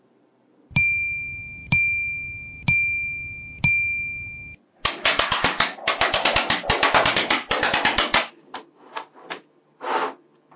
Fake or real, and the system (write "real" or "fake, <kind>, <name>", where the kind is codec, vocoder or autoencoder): real